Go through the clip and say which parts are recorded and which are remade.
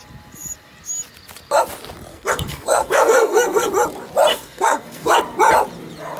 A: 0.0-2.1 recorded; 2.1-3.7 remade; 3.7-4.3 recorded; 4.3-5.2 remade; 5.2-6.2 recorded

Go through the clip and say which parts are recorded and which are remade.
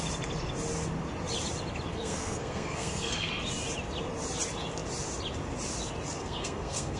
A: 0.0-1.9 recorded; 1.9-3.3 remade; 3.3-6.2 recorded; 6.2-7.0 remade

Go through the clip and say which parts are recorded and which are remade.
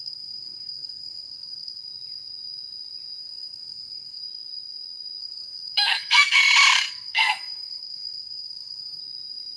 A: 0.0-1.8 remade; 1.8-3.2 recorded; 3.2-4.2 remade; 4.2-5.2 recorded; 5.2-6.4 remade; 6.4-6.9 recorded; 6.9-9.0 remade; 9.0-9.6 recorded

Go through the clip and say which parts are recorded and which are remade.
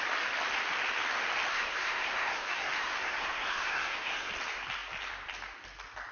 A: 0.0-1.5 recorded; 1.5-4.3 remade; 4.3-6.1 recorded